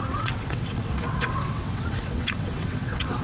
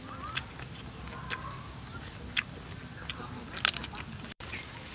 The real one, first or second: second